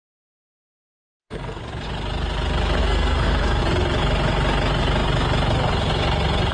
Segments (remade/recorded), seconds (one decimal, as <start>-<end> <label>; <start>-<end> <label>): 0.0-1.0 recorded; 1.0-1.6 remade; 1.6-2.8 recorded; 2.8-3.6 remade; 3.6-6.5 recorded